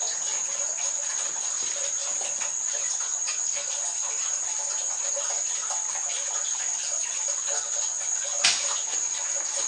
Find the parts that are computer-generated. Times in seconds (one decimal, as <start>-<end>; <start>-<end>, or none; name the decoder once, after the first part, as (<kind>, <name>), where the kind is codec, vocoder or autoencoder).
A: none